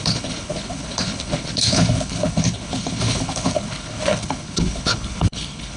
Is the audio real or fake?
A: fake